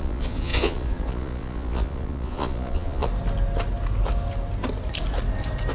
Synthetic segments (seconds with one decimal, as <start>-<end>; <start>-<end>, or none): 0.0-3.1